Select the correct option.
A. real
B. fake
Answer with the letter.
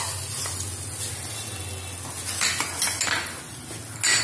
A